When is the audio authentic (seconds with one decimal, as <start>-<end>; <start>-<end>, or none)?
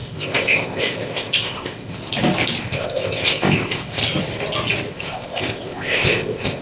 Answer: 2.0-2.6; 4.0-4.9